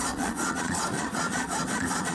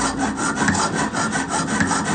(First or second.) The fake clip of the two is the first